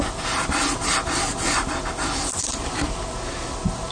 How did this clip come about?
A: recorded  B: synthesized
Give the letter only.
A